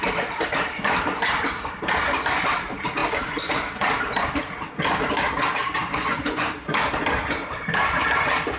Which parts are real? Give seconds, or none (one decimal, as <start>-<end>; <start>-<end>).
0.0-5.8; 6.5-8.6